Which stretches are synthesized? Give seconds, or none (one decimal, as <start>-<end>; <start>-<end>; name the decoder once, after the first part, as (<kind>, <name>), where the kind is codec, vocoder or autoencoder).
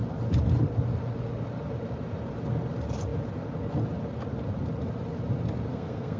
5.7-6.2 (codec, SNAC)